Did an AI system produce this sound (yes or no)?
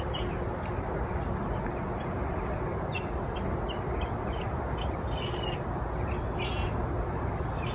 yes